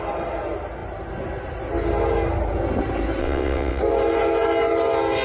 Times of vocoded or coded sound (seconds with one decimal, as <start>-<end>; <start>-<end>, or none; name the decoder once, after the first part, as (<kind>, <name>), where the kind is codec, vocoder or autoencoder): 3.2-3.8 (vocoder, WaveNeXt)